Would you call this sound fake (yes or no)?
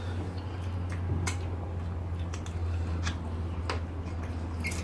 no